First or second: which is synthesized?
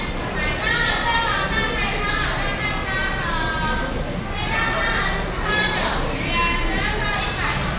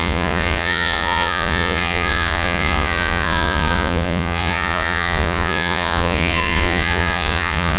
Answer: second